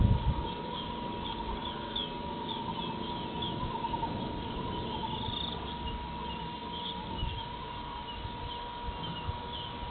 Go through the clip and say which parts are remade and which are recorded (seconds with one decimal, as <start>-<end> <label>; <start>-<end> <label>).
0.0-9.9 recorded